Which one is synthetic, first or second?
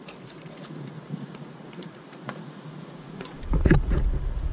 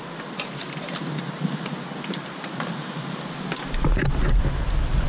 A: first